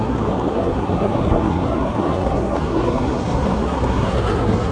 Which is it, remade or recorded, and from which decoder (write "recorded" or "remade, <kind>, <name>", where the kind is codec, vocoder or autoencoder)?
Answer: remade, codec, SNAC